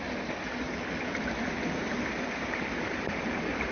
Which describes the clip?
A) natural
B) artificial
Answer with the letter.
A